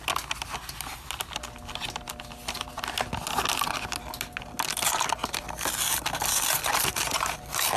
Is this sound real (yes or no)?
yes